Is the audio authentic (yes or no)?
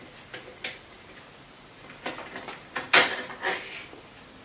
yes